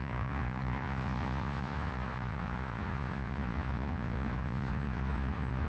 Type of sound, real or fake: fake